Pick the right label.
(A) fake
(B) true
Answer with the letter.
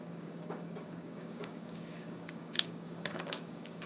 A